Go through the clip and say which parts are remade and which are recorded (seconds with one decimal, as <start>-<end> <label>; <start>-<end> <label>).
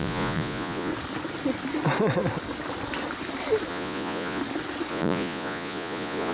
0.0-0.9 remade; 0.9-3.7 recorded; 3.7-4.4 remade; 4.4-4.9 recorded; 4.9-6.3 remade